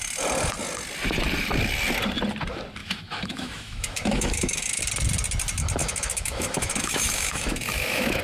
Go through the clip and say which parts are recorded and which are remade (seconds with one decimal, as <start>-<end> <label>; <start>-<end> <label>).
0.0-2.8 recorded; 2.8-4.8 remade; 4.8-5.8 recorded; 5.8-8.2 remade